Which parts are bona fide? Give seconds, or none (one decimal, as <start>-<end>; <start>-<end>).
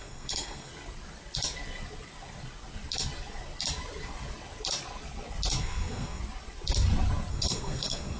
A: 0.7-5.6; 6.2-7.3